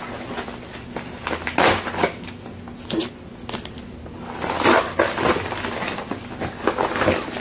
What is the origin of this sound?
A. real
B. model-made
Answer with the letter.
A